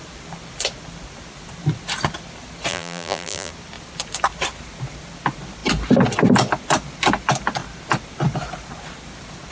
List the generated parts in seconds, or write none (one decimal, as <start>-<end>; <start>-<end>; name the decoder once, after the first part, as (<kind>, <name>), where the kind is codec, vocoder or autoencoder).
2.7-3.5 (vocoder, BigVGAN v2)